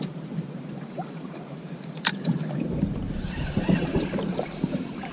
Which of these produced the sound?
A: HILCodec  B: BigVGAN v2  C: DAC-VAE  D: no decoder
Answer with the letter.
B